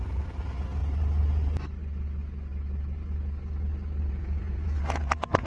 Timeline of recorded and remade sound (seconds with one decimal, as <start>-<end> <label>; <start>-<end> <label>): 0.0-0.8 remade; 0.8-4.1 recorded; 4.1-5.5 remade